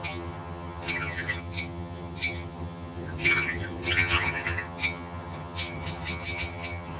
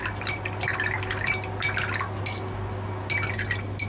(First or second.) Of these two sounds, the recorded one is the second